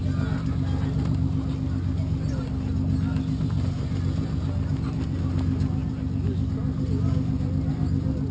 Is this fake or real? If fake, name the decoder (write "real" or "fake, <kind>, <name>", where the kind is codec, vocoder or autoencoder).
real